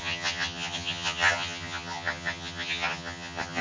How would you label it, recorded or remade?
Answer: remade